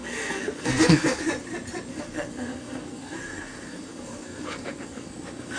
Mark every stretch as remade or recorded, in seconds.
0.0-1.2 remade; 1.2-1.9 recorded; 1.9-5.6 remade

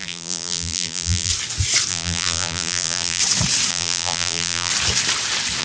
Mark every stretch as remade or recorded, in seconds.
0.0-1.3 remade; 1.3-1.9 recorded; 1.9-3.2 remade; 3.2-3.7 recorded; 3.7-4.7 remade; 4.7-5.6 recorded

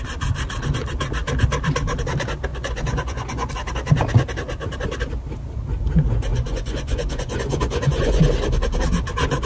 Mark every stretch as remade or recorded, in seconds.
0.0-2.5 recorded; 2.5-3.5 remade; 3.5-6.3 recorded; 6.3-8.2 remade; 8.2-9.5 recorded

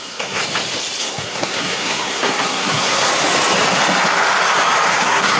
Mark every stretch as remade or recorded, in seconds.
0.0-0.4 remade; 0.4-1.0 recorded; 1.0-3.1 remade; 3.1-4.9 recorded; 4.9-5.4 remade

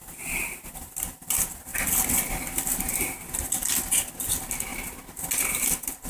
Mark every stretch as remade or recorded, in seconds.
0.0-6.1 recorded

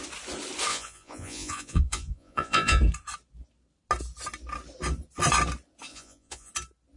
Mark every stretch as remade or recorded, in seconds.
0.0-0.7 recorded; 0.7-2.8 remade; 2.8-5.9 recorded; 5.9-6.5 remade; 6.5-7.0 recorded

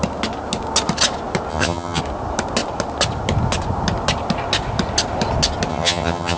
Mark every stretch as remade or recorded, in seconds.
0.0-1.5 recorded; 1.5-2.0 remade; 2.0-5.7 recorded; 5.7-6.4 remade